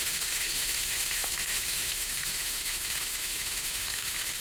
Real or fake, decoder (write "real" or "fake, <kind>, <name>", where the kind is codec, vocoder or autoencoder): fake, autoencoder, DAC-VAE